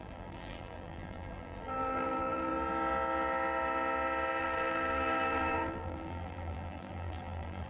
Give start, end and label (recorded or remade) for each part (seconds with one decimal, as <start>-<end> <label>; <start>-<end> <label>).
0.0-2.5 remade; 2.5-4.4 recorded; 4.4-7.7 remade